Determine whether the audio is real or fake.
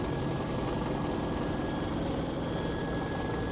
real